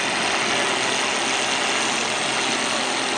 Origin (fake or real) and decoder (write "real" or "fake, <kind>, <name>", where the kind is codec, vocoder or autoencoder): real